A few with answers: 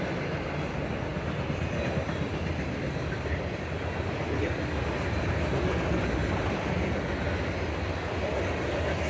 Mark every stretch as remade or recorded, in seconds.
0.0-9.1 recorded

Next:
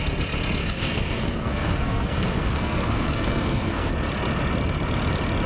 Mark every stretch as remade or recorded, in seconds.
0.0-0.6 recorded; 0.6-3.9 remade; 3.9-5.5 recorded

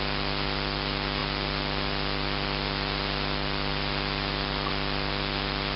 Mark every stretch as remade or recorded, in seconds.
0.0-5.8 recorded

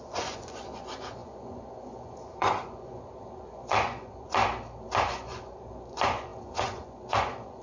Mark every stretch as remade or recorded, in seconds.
0.0-4.4 remade; 4.4-5.0 recorded; 5.0-7.6 remade

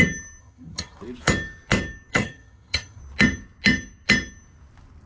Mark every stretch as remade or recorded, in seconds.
0.0-0.4 recorded; 0.4-1.0 remade; 1.0-2.1 recorded; 2.1-3.0 remade; 3.0-5.1 recorded

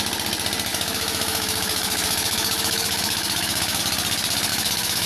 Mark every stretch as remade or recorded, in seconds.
0.0-0.7 recorded; 0.7-3.8 remade; 3.8-4.5 recorded; 4.5-5.1 remade

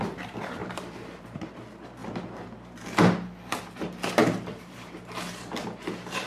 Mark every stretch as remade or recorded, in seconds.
0.0-0.6 recorded; 0.6-1.4 remade; 1.4-4.2 recorded; 4.2-4.9 remade; 4.9-6.3 recorded

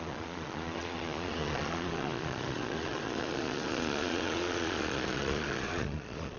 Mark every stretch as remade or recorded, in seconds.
0.0-6.4 remade